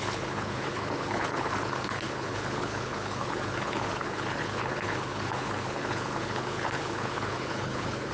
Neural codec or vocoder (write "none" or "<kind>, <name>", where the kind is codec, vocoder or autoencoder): codec, HILCodec